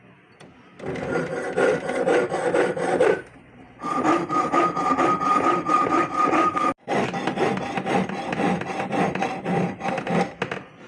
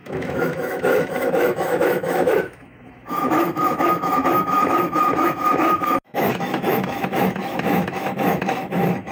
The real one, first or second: first